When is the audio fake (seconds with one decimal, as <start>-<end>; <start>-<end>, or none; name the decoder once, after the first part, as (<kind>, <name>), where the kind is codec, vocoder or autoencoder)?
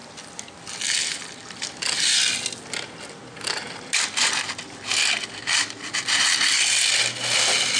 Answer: none